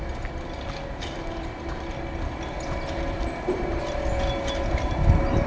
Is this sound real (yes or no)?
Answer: yes